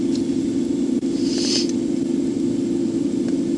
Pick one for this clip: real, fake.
fake